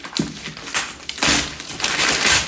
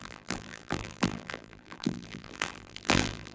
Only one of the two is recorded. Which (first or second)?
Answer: first